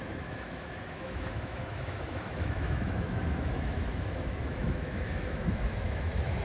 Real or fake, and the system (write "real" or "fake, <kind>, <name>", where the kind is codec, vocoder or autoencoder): fake, autoencoder, DAC-VAE